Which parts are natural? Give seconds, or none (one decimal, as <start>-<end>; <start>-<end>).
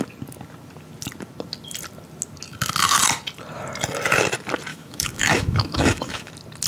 0.0-4.7; 6.3-6.7